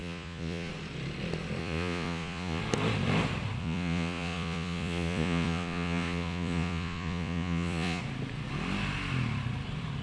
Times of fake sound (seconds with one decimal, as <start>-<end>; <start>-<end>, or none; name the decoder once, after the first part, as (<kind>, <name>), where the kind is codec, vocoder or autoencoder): 0.0-0.7 (vocoder, Vocos); 1.6-2.6; 3.6-8.0